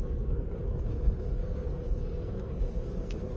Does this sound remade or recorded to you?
remade